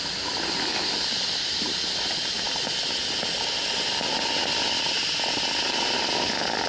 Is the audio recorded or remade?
recorded